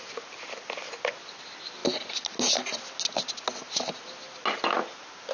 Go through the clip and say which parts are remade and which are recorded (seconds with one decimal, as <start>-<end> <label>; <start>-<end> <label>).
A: 0.0-5.3 recorded